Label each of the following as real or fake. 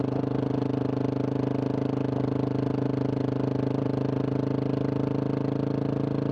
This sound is real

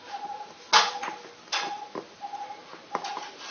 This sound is real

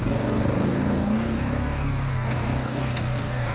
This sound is fake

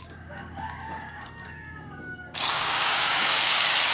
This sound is fake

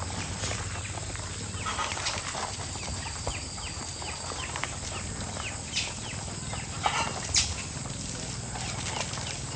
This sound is real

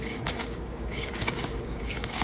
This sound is fake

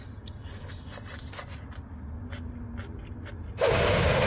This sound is real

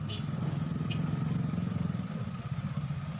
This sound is real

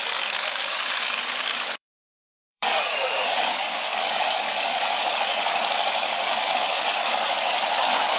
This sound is fake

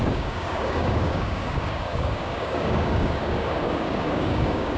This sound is fake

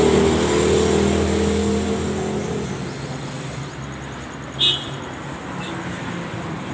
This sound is real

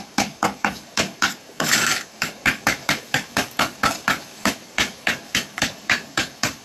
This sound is fake